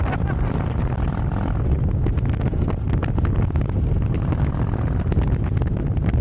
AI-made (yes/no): no